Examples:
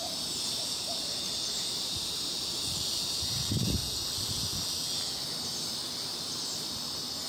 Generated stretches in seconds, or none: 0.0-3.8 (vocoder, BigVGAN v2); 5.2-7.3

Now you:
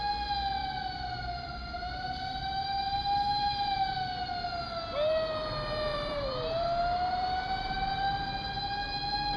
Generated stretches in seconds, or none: 0.6-3.9 (vocoder, BigVGAN v2); 5.9-8.0

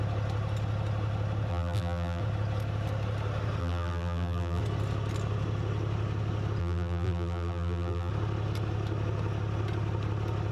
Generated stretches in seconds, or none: 1.5-2.2 (vocoder, BigVGAN v2); 3.6-4.6; 6.6-8.1

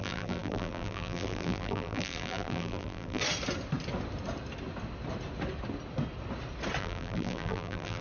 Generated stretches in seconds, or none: 0.0-3.2 (vocoder, BigVGAN v2); 6.8-8.0